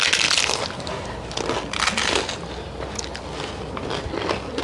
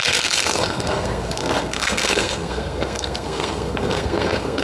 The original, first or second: first